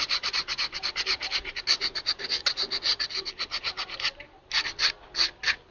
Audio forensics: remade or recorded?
recorded